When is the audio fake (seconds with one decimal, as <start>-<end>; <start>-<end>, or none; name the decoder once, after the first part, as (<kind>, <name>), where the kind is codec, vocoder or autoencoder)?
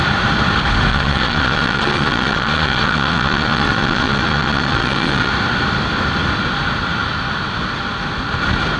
0.9-5.3 (vocoder, Vocos)